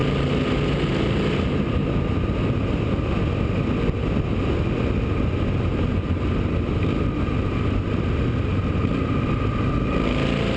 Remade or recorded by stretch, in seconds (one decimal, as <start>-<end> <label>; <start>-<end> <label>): 0.0-10.6 recorded